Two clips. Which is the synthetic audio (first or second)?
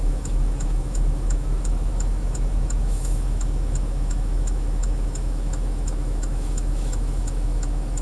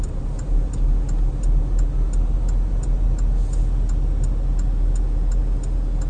first